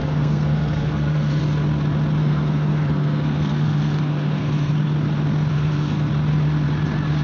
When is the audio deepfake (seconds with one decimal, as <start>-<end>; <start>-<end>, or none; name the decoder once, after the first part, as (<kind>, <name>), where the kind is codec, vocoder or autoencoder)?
0.0-1.4 (codec, SNAC); 2.2-4.7; 5.5-6.1